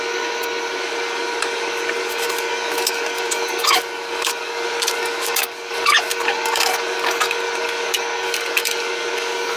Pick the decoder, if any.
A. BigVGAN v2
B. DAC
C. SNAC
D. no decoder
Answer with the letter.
B